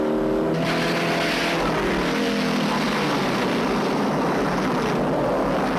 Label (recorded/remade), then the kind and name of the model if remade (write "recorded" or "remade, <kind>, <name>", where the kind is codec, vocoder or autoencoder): recorded